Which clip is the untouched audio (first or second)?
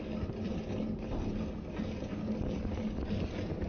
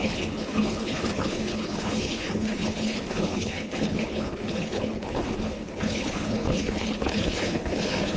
first